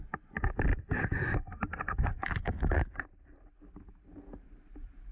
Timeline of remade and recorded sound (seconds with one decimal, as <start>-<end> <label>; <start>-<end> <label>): 0.0-0.7 recorded; 0.7-3.4 remade; 3.4-5.1 recorded

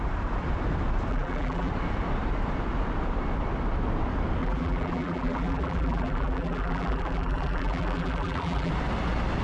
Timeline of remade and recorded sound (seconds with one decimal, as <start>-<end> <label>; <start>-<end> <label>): 0.0-1.1 recorded; 1.1-1.7 remade; 1.7-4.4 recorded; 4.4-8.7 remade; 8.7-9.4 recorded

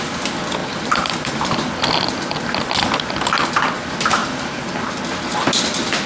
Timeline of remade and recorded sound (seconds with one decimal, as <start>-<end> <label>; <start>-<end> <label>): 0.0-0.6 recorded; 0.6-1.8 remade; 1.8-4.2 recorded; 4.2-5.0 remade; 5.0-6.1 recorded

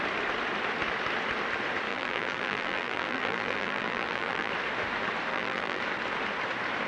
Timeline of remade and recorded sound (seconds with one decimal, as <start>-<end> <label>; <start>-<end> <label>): 0.0-1.9 recorded; 1.9-4.5 remade; 4.5-5.3 recorded; 5.3-5.8 remade; 5.8-6.9 recorded

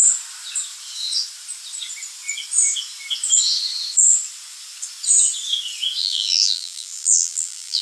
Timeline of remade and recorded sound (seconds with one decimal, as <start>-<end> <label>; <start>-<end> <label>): 0.0-6.0 recorded; 6.0-7.8 remade

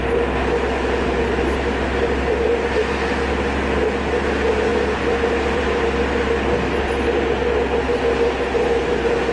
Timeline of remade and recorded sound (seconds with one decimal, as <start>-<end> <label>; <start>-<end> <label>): 0.0-4.7 recorded; 4.7-5.6 remade; 5.6-9.3 recorded